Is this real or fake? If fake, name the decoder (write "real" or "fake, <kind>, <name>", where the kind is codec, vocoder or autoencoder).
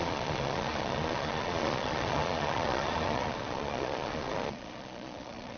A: fake, vocoder, Vocos